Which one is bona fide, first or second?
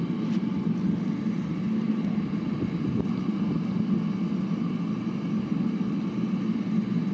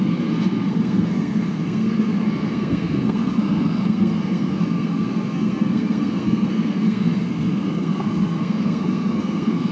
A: first